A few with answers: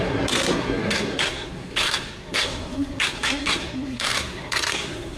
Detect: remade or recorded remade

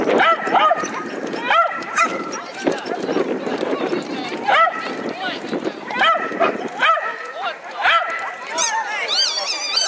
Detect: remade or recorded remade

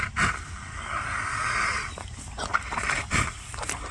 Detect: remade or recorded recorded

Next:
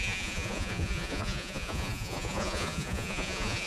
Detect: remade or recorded remade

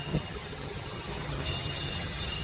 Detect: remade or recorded remade